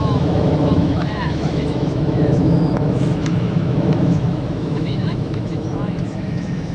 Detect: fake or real fake